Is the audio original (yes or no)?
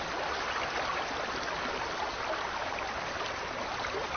yes